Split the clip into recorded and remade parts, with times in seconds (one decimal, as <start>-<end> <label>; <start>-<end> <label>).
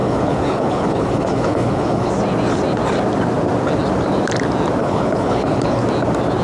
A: 0.0-2.1 remade; 2.1-4.8 recorded; 4.8-5.8 remade; 5.8-6.4 recorded